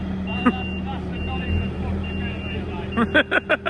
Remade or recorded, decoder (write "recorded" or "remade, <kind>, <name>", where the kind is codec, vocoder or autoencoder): recorded